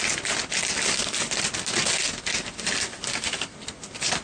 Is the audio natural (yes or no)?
yes